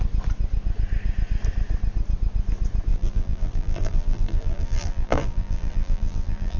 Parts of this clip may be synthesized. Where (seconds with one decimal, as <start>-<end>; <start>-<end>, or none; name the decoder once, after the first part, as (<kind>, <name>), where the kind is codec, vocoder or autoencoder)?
2.9-6.6 (vocoder, BigVGAN v2)